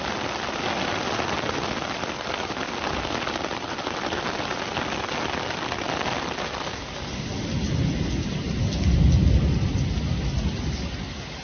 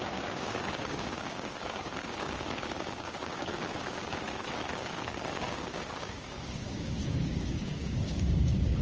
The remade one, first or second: second